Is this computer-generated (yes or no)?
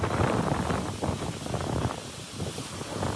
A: no